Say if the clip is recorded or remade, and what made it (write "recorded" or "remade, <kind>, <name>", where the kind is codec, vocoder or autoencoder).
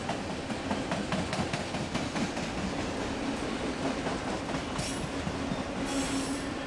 recorded